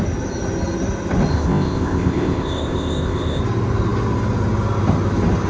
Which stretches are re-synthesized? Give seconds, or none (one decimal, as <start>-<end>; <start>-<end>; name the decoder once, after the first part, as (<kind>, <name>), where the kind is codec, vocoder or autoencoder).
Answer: 1.3-3.4 (codec, ZipCodec)